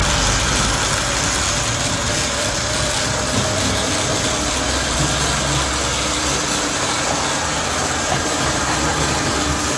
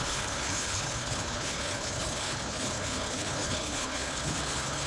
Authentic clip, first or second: first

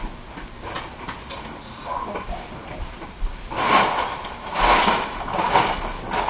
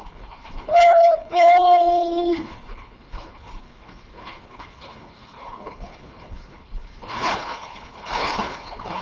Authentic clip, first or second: first